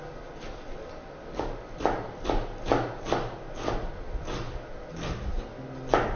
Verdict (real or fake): real